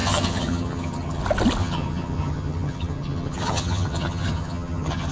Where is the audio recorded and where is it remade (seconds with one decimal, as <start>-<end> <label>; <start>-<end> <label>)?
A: 0.0-1.2 remade; 1.2-1.6 recorded; 1.6-5.1 remade